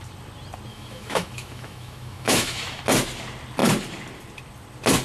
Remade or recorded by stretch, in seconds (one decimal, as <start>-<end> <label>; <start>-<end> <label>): 0.0-0.7 recorded; 0.7-2.8 remade; 2.8-5.0 recorded